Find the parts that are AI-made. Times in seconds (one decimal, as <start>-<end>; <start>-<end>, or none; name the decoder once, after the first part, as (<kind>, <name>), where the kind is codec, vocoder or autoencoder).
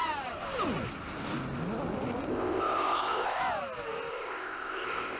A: 2.3-3.4 (codec, ZipCodec); 4.1-5.2